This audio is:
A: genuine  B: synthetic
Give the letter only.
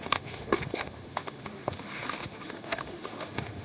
B